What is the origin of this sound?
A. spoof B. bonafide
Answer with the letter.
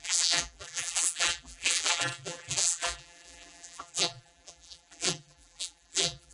A